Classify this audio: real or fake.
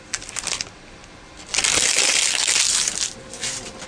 real